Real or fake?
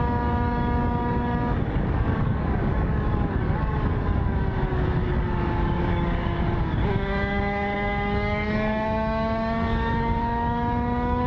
fake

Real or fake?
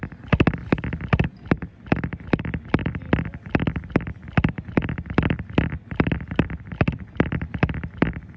real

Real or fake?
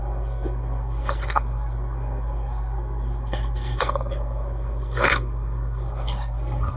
fake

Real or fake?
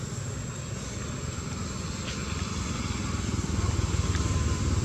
real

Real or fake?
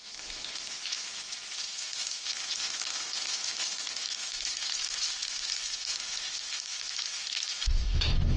fake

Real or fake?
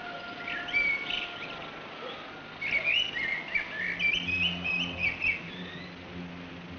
real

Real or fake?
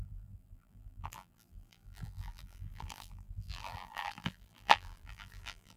fake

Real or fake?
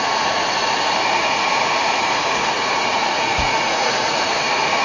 fake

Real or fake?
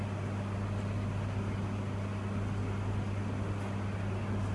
real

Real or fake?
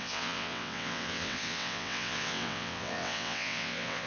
fake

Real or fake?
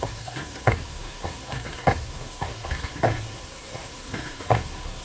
fake